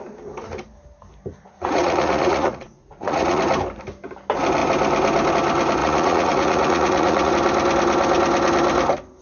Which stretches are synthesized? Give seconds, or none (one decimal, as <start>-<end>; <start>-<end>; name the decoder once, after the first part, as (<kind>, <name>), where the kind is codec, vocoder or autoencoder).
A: 1.4-3.4 (vocoder, Vocos); 5.8-7.3